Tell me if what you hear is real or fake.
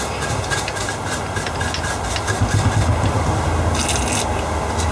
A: real